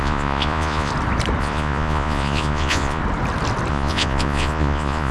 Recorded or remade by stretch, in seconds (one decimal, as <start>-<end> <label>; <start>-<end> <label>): 0.0-0.9 remade; 0.9-1.4 recorded; 1.4-3.0 remade; 3.0-3.7 recorded; 3.7-5.1 remade